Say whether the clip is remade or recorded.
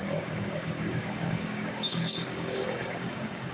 remade